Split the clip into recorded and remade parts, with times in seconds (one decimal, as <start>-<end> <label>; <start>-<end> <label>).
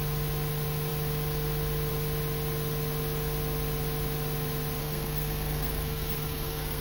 0.0-4.8 recorded; 4.8-6.8 remade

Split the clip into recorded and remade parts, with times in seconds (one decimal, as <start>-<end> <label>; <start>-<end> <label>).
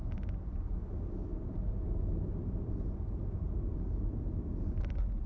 0.0-5.3 recorded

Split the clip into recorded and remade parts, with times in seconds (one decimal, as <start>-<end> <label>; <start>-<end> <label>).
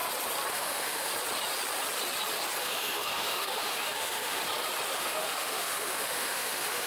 0.0-0.5 recorded; 0.5-1.1 remade; 1.1-2.6 recorded; 2.6-4.4 remade; 4.4-4.9 recorded; 4.9-6.9 remade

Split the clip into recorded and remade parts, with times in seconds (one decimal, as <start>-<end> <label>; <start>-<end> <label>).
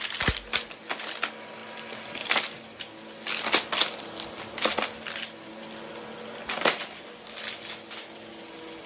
0.0-8.9 recorded